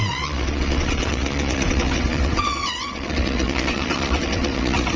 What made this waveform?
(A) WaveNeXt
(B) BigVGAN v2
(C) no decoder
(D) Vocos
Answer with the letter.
A